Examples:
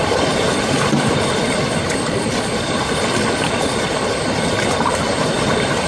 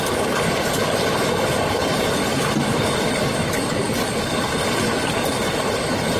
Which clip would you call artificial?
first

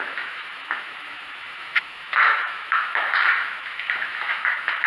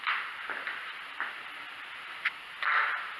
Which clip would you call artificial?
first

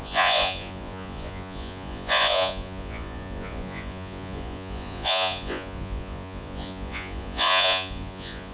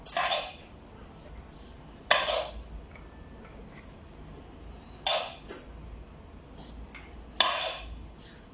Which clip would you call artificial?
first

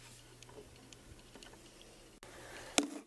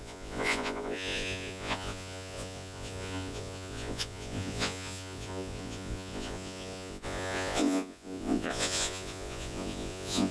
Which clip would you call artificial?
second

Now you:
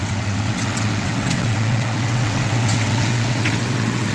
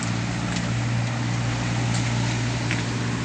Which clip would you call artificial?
first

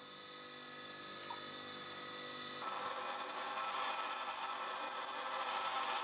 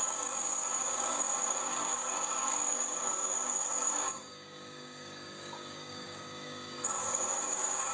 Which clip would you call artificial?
second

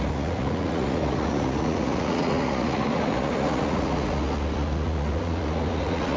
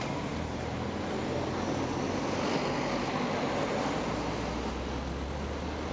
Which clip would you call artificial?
first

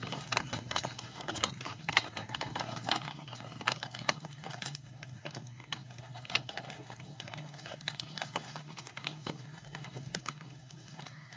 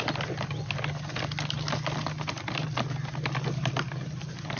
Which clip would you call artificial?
first